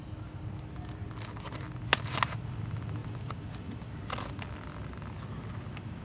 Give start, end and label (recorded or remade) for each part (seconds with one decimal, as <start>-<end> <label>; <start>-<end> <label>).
0.0-6.0 recorded